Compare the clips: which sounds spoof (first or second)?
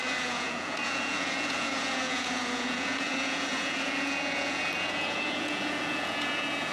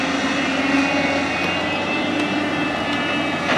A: first